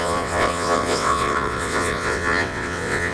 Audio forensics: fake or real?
fake